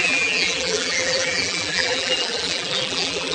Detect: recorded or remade remade